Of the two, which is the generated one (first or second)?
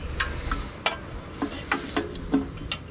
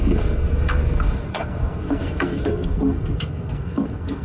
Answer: second